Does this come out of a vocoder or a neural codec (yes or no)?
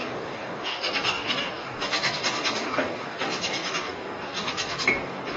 yes